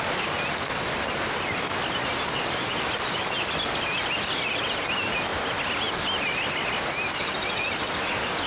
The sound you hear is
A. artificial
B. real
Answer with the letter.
B